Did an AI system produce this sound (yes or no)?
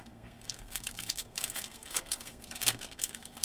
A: yes